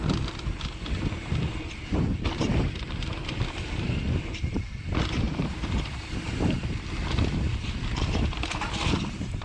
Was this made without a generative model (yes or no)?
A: no